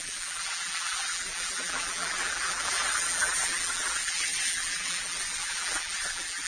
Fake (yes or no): yes